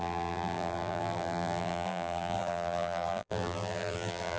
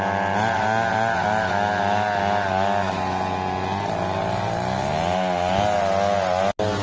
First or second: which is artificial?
first